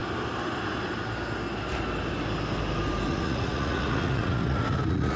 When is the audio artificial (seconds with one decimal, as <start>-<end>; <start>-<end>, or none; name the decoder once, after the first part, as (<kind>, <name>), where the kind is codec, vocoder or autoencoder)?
3.1-5.2 (vocoder, Vocos)